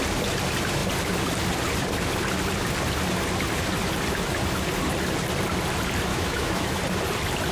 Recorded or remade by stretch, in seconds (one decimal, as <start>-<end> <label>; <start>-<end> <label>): 0.0-6.1 recorded; 6.1-6.8 remade; 6.8-7.5 recorded